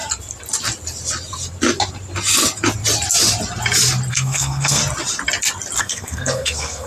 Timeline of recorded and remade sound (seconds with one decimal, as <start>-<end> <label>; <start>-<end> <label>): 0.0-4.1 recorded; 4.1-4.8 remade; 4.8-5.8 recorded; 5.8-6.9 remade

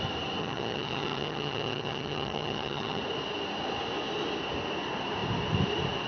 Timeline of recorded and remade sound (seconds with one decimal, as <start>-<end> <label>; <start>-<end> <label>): 0.0-0.4 recorded; 0.4-3.0 remade; 3.0-6.1 recorded

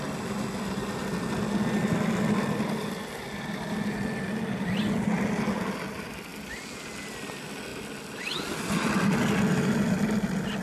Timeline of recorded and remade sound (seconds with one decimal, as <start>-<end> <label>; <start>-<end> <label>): 0.0-10.6 recorded